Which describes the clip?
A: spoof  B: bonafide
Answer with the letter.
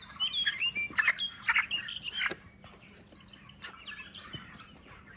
B